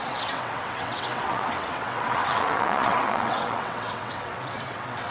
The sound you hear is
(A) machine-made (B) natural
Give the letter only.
A